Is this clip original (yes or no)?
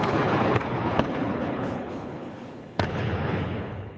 no